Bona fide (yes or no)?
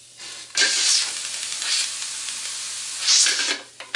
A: yes